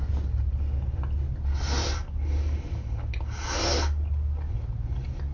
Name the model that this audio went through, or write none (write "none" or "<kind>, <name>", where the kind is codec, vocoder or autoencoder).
none